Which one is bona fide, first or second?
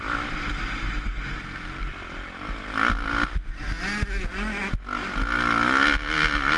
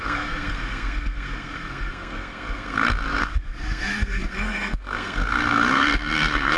first